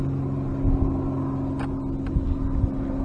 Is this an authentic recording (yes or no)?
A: yes